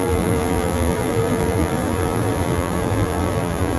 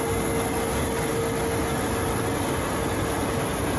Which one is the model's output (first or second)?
first